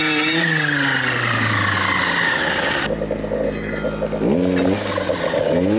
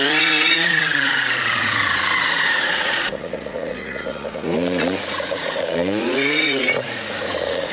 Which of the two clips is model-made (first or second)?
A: second